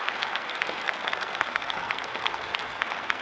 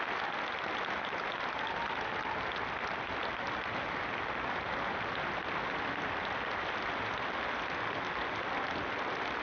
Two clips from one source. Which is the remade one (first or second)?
first